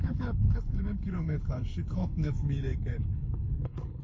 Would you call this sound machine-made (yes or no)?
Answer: yes